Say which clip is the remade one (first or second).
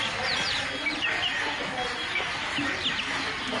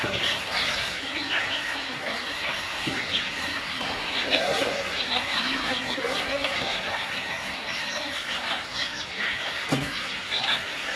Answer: second